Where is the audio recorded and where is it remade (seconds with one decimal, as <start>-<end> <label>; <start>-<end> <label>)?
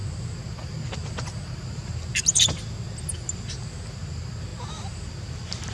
0.0-5.7 recorded